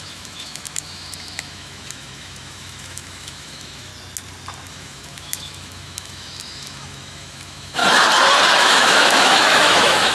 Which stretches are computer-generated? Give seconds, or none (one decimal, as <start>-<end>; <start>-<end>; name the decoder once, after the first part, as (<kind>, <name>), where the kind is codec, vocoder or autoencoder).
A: 0.0-3.9 (autoencoder, DAC-VAE); 4.7-7.8; 8.6-10.1

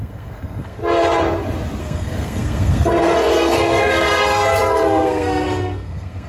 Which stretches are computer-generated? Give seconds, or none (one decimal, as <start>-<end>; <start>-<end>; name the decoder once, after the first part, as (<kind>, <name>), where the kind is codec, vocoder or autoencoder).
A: 0.0-0.8 (codec, SNAC); 1.8-6.3

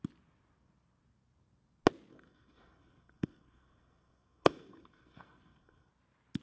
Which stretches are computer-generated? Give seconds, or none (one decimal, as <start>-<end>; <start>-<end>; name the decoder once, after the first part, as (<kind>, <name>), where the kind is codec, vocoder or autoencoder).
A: 2.1-5.9 (codec, SNAC)

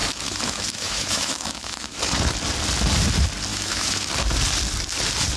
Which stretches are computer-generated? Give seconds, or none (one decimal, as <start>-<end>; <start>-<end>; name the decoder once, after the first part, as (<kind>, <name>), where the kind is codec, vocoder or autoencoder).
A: 0.0-2.0 (autoencoder, DAC-VAE); 3.5-4.1